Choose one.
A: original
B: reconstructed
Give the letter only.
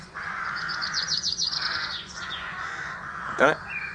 B